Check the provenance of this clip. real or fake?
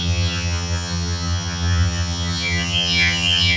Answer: fake